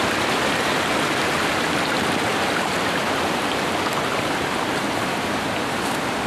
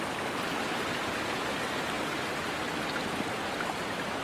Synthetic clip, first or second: first